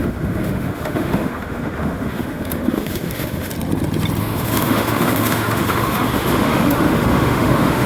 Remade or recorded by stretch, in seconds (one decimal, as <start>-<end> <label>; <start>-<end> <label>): 0.0-3.5 remade; 3.5-4.2 recorded; 4.2-7.9 remade